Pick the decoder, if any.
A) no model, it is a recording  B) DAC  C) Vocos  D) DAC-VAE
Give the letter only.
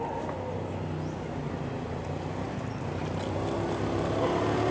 A